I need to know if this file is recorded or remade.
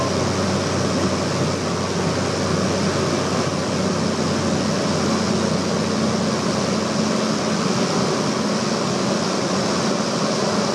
recorded